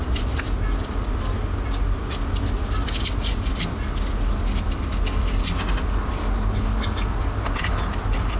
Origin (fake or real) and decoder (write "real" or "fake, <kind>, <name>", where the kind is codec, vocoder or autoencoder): real